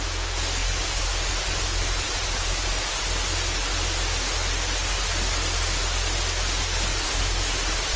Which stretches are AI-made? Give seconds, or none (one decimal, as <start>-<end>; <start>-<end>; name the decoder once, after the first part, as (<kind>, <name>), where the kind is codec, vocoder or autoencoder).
0.6-3.1 (vocoder, BigVGAN v2); 6.9-8.0